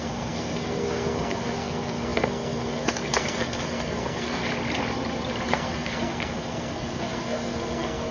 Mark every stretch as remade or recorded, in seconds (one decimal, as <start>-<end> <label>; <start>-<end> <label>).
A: 0.0-4.4 remade; 4.4-5.5 recorded; 5.5-8.1 remade